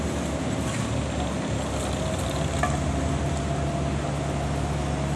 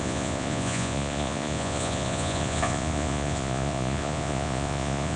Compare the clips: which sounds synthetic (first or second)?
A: second